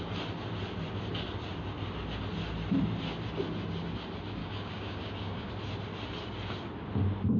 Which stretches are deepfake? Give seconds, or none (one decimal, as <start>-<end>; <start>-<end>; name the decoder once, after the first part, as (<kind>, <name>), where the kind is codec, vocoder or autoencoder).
4.4-5.5 (codec, DAC)